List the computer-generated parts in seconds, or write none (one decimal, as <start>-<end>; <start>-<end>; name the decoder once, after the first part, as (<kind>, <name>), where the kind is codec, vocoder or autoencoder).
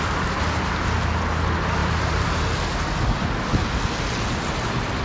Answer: none